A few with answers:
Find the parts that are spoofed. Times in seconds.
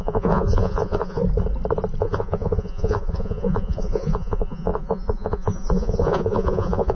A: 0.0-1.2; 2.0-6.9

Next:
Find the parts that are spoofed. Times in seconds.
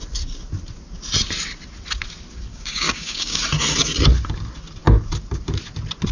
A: 2.5-3.4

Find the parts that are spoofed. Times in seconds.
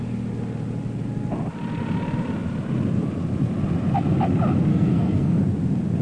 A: 4.7-5.4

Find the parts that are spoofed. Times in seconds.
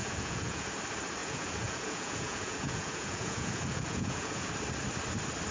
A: 0.0-0.7; 1.2-4.5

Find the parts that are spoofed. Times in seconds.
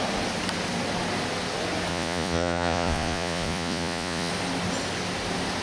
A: 1.9-4.3